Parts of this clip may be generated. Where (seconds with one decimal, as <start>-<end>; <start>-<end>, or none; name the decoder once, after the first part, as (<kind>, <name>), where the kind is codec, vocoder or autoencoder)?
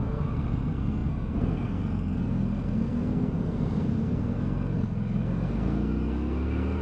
0.0-6.8 (codec, SNAC)